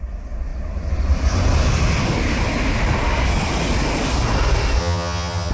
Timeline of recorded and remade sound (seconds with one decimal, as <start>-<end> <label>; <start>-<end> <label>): 0.0-4.8 recorded; 4.8-5.5 remade